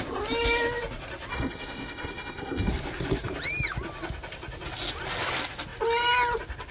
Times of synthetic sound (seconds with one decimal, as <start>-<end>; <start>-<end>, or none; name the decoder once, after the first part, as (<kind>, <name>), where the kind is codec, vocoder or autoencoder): 1.3-2.7 (codec, SNAC)